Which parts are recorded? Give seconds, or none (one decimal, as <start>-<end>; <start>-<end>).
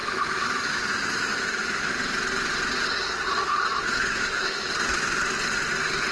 1.9-3.4; 4.7-6.1